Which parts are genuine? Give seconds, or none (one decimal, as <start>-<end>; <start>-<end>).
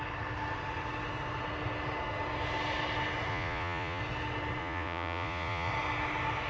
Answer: 0.0-3.3; 4.0-4.6; 5.7-6.5